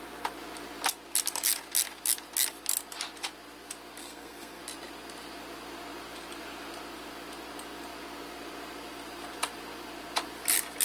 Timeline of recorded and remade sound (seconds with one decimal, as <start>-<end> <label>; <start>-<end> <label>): 0.0-4.0 recorded; 4.0-4.6 remade; 4.6-10.8 recorded